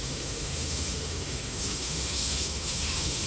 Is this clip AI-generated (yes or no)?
yes